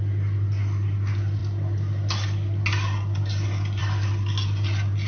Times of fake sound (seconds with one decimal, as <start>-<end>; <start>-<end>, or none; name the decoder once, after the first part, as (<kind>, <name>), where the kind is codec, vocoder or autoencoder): none